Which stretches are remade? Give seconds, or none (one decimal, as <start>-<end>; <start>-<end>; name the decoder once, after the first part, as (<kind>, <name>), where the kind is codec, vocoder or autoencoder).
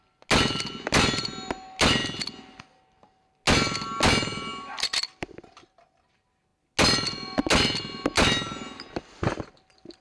none